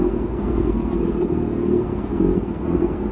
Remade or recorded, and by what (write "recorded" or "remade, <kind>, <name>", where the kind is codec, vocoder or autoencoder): remade, codec, SNAC